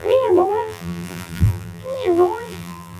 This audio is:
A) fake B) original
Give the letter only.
A